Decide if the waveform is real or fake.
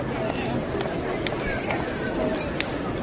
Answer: real